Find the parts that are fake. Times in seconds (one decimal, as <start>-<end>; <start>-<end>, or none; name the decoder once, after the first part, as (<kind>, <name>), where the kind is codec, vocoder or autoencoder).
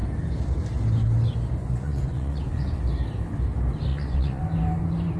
1.6-2.8 (vocoder, Vocos); 3.9-4.4